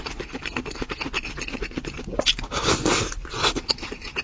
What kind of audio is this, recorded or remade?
recorded